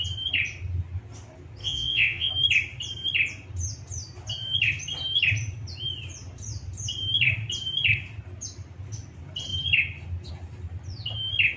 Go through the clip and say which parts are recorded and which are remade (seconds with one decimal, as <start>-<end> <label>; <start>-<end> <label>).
0.0-1.6 recorded; 1.6-2.3 remade; 2.3-11.6 recorded